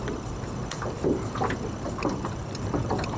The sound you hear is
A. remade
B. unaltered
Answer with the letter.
B